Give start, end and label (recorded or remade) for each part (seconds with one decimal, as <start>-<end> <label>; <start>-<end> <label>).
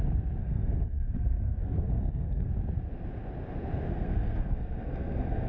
0.0-0.4 recorded; 0.4-2.5 remade; 2.5-3.9 recorded; 3.9-5.5 remade